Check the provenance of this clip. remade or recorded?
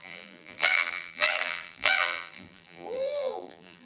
remade